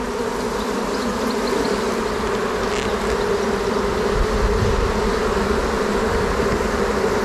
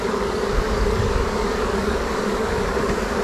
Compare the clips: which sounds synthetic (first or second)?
second